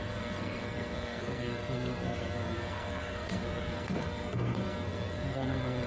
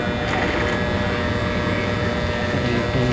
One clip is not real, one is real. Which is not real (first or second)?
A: first